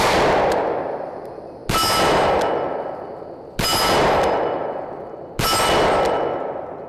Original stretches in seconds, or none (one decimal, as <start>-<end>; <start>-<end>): 0.0-6.9